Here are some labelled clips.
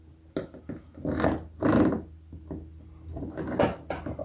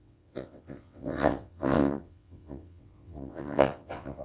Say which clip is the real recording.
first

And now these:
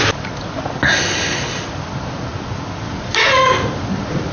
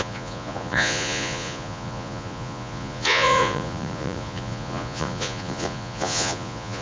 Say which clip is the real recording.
first